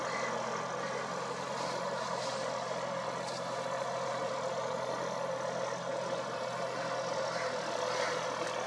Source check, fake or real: fake